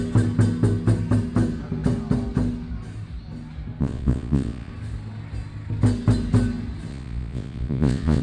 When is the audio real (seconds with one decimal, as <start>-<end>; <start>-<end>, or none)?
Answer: 0.0-3.8; 4.7-6.9